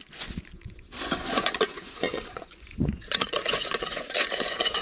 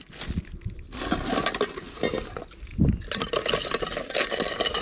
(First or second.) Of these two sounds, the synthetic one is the first